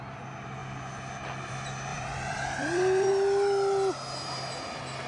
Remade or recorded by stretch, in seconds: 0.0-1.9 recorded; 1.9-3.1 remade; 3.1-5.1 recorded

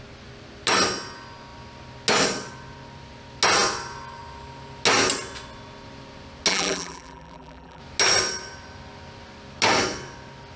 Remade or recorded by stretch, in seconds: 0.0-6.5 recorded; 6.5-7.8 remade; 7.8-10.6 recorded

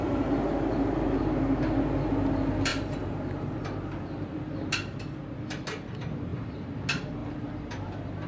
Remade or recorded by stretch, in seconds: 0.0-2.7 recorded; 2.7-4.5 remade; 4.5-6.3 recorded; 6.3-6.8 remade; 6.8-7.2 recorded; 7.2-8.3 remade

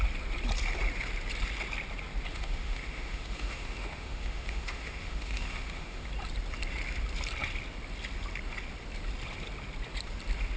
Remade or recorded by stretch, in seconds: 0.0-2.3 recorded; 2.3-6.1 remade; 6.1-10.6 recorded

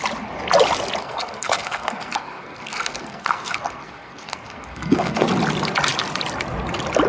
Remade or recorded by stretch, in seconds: 0.0-1.0 recorded; 1.0-5.3 remade; 5.3-7.1 recorded

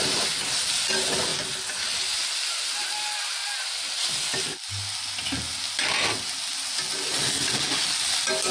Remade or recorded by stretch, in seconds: 0.0-8.5 recorded

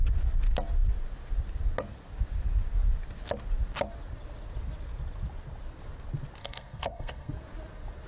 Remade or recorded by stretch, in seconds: 0.0-6.4 recorded; 6.4-7.3 remade; 7.3-8.1 recorded